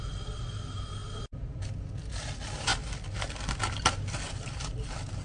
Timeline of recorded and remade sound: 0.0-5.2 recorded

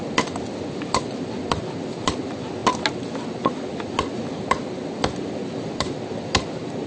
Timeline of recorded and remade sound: 0.0-6.9 recorded

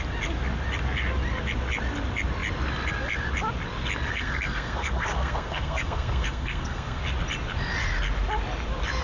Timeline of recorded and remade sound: 0.0-4.1 recorded; 4.1-7.0 remade; 7.0-9.0 recorded

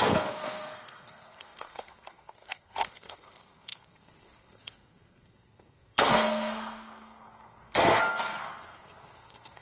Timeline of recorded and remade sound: 0.0-9.6 remade